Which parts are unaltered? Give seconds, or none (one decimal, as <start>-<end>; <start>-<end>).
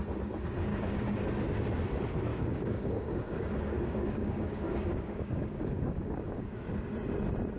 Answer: 0.0-0.7; 1.2-2.3; 6.6-7.6